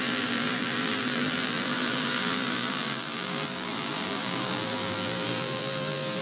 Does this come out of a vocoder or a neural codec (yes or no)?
yes